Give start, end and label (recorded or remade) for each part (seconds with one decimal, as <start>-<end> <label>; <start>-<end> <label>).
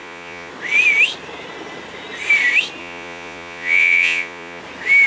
0.0-0.5 remade; 0.5-2.8 recorded; 2.8-4.6 remade; 4.6-5.1 recorded